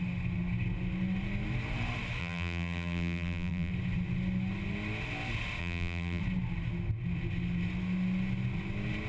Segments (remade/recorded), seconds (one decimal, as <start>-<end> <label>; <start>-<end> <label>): 0.0-2.2 recorded; 2.2-3.7 remade; 3.7-5.6 recorded; 5.6-6.2 remade; 6.2-9.1 recorded